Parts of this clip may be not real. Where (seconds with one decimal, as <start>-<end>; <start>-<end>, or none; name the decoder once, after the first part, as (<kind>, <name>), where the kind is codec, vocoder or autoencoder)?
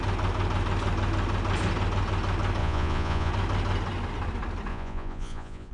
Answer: 2.6-3.3 (vocoder, Vocos); 4.7-5.7